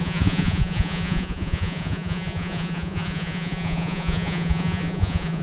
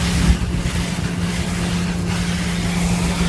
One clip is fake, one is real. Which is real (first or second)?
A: second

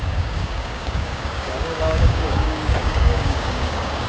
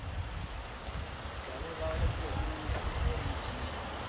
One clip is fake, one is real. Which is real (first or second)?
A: second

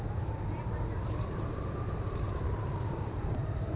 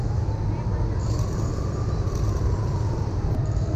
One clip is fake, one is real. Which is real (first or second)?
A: second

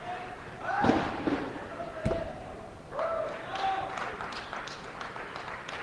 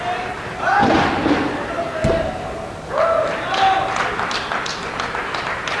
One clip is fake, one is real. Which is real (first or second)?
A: second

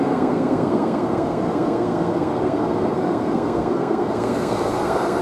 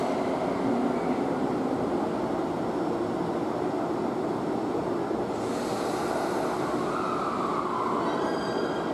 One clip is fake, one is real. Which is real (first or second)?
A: second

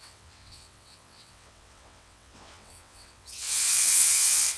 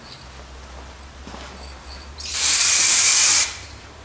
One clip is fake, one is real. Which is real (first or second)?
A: second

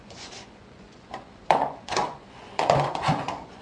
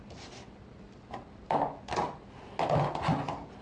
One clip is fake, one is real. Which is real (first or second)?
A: second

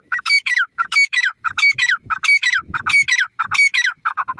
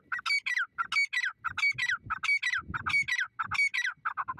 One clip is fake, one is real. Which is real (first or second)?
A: second